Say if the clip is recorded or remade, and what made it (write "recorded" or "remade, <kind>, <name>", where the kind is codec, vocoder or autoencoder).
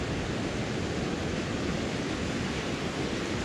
recorded